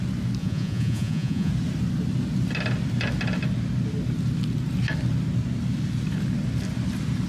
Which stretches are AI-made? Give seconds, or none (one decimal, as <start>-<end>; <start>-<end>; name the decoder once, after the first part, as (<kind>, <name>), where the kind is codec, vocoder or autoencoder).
0.4-1.5 (vocoder, Vocos)